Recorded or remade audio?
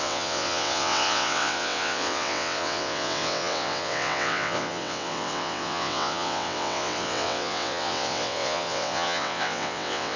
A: remade